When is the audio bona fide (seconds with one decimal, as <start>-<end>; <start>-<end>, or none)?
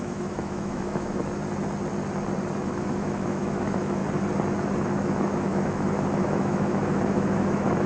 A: 1.2-2.6; 4.0-4.8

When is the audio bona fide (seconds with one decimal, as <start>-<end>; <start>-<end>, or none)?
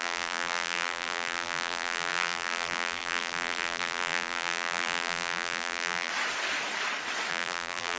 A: 6.1-7.3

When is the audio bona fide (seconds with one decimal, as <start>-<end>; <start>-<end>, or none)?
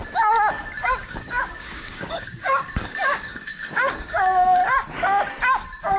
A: 0.0-1.0; 4.6-6.0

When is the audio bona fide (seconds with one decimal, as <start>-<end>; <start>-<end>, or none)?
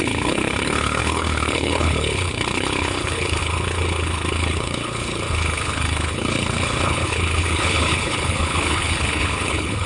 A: none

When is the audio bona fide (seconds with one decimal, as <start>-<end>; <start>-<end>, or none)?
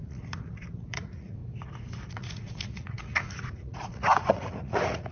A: 1.4-2.1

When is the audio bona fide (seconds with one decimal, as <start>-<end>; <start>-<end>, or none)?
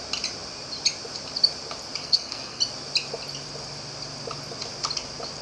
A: 0.0-2.0; 2.6-5.4